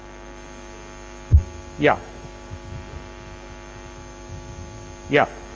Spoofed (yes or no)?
no